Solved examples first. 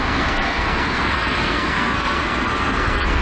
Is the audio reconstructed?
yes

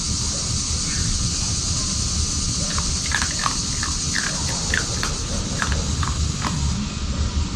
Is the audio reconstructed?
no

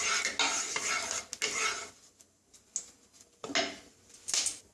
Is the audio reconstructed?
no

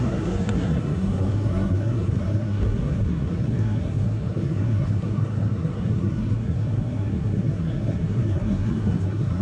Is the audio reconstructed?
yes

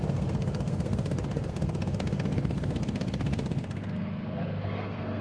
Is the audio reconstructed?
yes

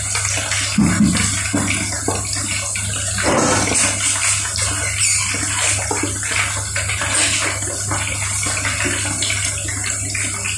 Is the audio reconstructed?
no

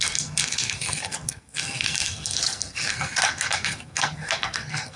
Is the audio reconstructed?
yes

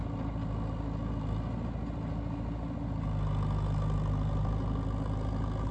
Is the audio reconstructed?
no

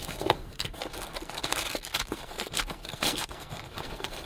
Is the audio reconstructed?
yes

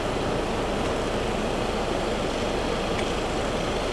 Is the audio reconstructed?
no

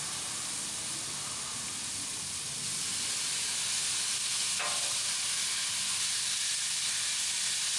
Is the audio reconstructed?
no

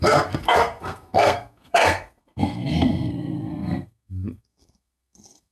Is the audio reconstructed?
yes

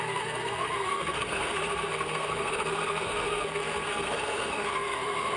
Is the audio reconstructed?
yes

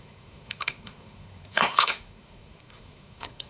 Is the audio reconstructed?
yes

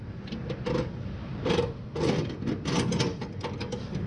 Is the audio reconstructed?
no